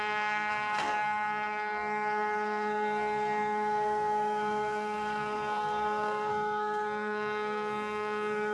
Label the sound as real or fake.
fake